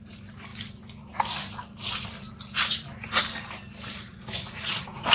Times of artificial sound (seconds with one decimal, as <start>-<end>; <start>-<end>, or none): 4.1-5.1